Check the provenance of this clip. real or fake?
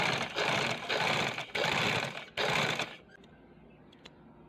real